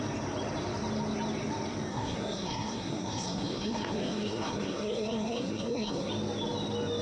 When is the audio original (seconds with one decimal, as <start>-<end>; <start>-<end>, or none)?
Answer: 0.0-1.9; 6.1-7.0